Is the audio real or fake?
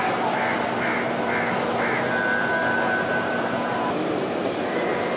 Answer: real